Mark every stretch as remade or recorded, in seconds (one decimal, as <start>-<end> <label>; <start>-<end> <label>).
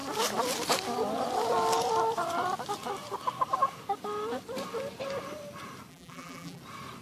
0.0-5.9 recorded; 5.9-6.6 remade; 6.6-7.0 recorded